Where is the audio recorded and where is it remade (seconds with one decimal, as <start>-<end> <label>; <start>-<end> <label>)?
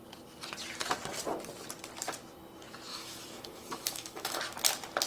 0.0-2.9 recorded; 2.9-4.4 remade; 4.4-5.1 recorded